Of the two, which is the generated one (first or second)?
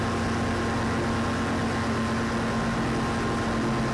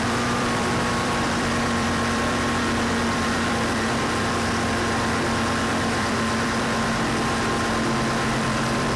second